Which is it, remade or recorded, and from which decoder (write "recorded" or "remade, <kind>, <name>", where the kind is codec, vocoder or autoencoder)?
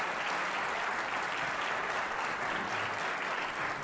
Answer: recorded